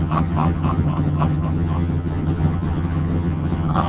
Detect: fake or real fake